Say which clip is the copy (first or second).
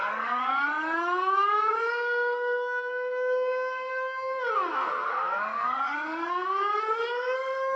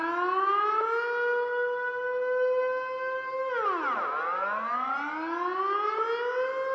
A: first